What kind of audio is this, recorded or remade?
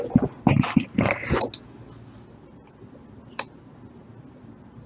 recorded